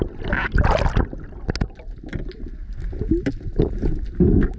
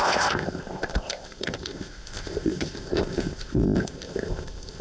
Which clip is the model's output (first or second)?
second